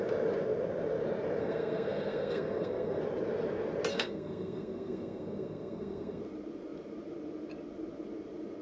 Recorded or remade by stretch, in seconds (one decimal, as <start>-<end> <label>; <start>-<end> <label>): 0.0-1.4 recorded; 1.4-3.0 remade; 3.0-3.9 recorded; 3.9-6.2 remade; 6.2-8.6 recorded